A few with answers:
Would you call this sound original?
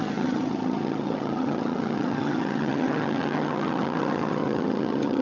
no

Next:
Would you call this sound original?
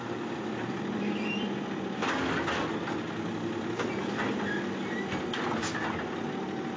yes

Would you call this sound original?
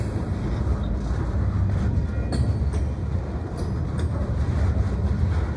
yes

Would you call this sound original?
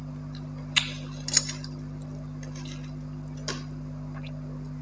yes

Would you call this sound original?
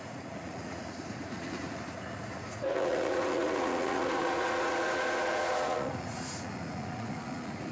no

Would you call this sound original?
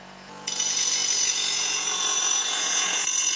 no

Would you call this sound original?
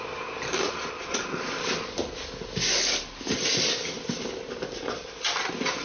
yes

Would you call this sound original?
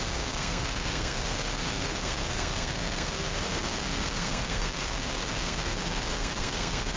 no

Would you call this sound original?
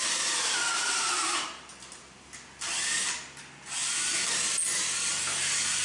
yes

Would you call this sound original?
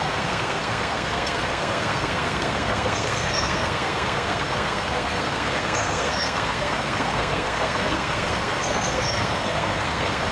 no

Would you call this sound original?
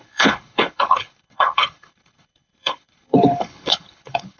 no